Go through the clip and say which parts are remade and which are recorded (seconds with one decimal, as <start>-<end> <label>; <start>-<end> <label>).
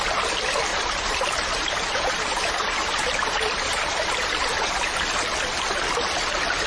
0.0-0.7 recorded; 0.7-4.7 remade; 4.7-6.7 recorded